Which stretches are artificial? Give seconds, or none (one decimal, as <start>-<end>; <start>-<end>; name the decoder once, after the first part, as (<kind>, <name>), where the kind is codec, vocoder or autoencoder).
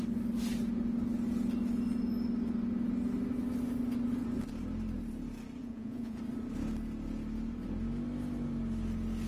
5.6-6.2 (vocoder, Vocos)